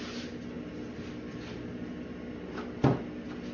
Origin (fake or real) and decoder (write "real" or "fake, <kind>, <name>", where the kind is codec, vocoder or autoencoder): real